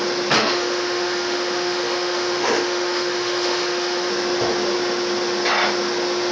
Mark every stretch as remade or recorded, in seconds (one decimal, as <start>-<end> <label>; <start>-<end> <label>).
0.0-0.4 recorded; 0.4-4.1 remade; 4.1-6.3 recorded